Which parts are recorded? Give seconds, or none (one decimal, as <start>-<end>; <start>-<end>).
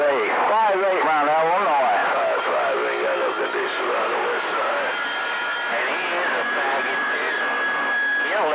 0.0-8.5